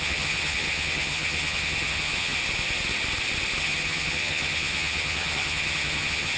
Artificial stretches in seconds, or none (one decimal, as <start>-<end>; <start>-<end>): 0.0-2.4; 3.6-6.4

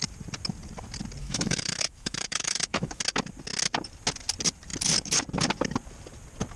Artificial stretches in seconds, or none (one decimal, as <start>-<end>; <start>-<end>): 1.2-3.0

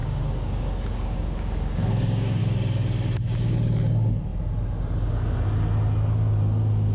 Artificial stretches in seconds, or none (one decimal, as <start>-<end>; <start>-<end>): 0.0-2.4